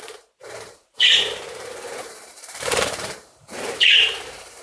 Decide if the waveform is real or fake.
fake